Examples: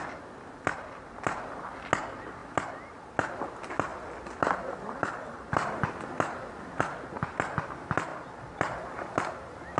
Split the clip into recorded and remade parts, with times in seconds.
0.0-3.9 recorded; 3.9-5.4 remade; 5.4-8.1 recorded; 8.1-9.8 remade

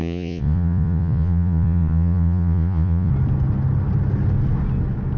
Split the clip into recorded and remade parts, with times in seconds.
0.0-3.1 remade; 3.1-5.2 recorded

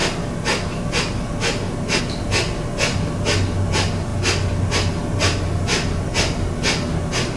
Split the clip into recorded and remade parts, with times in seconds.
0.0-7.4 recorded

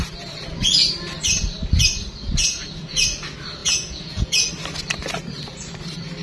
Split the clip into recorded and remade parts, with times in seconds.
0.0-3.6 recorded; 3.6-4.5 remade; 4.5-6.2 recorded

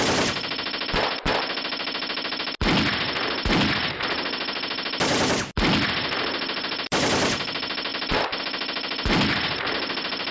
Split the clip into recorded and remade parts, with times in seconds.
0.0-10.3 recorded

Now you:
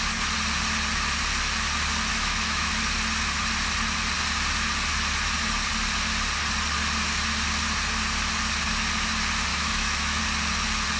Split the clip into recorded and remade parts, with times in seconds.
0.0-2.1 recorded; 2.1-2.7 remade; 2.7-9.5 recorded; 9.5-10.2 remade; 10.2-11.0 recorded

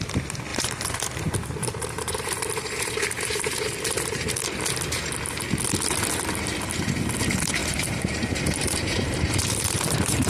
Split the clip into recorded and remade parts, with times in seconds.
0.0-0.5 recorded; 0.5-1.0 remade; 1.0-1.6 recorded; 1.6-4.3 remade; 4.3-7.6 recorded; 7.6-10.3 remade